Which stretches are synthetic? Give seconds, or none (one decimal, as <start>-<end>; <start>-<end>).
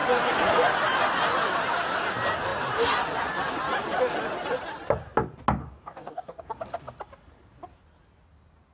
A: 5.6-6.5